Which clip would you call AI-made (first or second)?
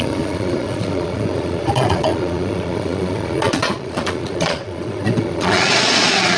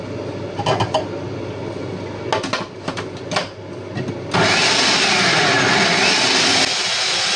first